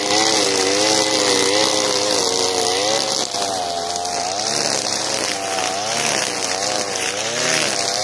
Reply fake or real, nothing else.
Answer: real